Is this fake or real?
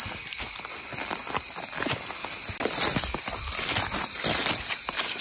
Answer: real